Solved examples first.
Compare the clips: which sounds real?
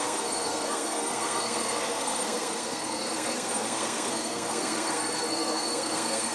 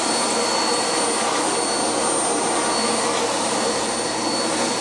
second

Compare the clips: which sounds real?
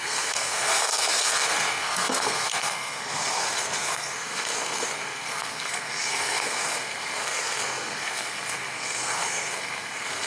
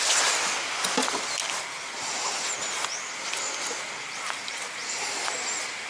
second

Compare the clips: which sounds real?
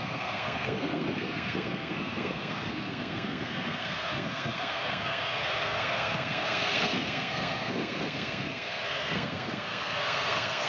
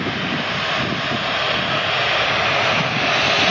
second